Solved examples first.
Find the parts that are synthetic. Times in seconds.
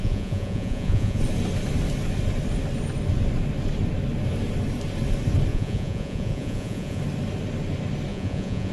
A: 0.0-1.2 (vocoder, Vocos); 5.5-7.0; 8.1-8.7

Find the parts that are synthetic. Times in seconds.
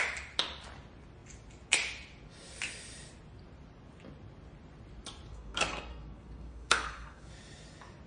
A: 5.3-7.3 (codec, SNAC)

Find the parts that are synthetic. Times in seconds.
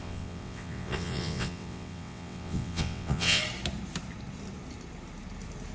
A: 0.0-3.4 (vocoder, WaveNeXt)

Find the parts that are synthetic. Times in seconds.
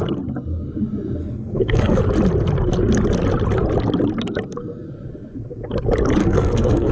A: 1.2-2.0 (codec, SNAC); 6.2-6.9